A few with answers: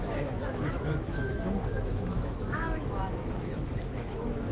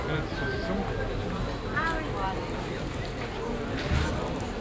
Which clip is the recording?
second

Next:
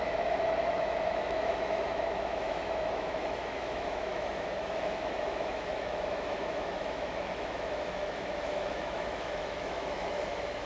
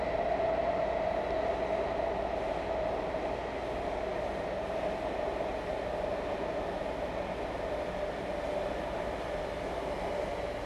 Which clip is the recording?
second